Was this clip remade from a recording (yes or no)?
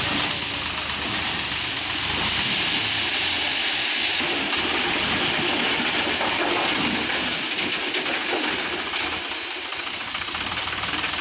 no